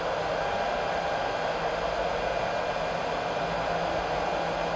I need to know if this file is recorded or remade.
recorded